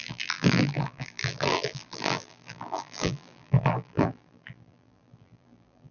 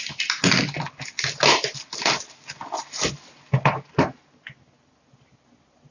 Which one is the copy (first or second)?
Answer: first